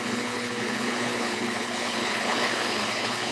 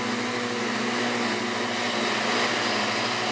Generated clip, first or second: first